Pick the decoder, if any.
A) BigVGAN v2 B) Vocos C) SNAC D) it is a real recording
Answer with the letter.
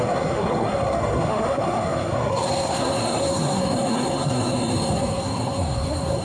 C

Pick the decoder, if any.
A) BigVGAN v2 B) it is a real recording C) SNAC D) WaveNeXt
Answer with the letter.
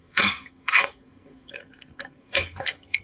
C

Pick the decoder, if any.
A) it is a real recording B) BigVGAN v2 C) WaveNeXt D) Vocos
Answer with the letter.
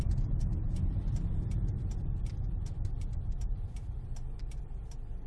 A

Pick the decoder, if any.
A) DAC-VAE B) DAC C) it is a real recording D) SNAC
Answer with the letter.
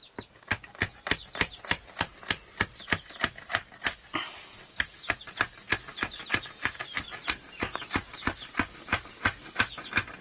C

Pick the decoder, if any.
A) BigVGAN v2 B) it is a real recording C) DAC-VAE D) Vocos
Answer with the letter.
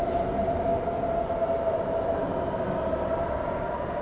B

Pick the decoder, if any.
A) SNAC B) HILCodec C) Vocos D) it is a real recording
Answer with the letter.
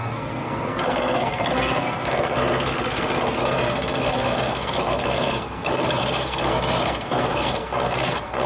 A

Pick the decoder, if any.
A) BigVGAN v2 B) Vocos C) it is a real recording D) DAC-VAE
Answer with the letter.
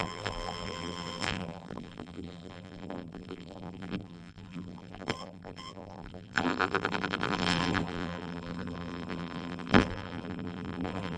A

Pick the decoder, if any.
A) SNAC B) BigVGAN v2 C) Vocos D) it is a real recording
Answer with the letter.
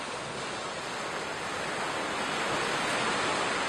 D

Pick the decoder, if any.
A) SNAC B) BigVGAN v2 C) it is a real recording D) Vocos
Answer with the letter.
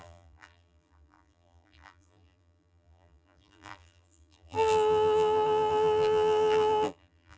B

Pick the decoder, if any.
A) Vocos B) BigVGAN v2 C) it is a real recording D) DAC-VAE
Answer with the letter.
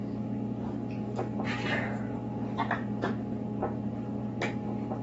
C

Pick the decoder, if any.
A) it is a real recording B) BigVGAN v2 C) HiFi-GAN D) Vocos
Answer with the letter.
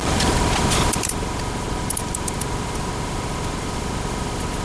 B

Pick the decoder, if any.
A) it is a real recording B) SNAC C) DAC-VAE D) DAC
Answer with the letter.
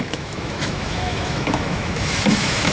C